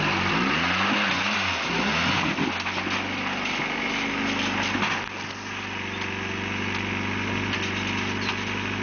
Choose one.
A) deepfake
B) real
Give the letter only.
B